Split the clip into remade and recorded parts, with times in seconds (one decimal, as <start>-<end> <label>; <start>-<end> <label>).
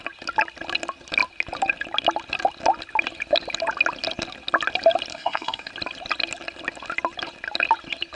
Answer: 0.0-5.1 recorded; 5.1-5.7 remade; 5.7-8.1 recorded